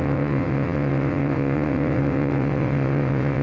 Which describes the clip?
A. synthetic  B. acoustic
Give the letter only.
A